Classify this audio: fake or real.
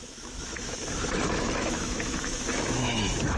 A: fake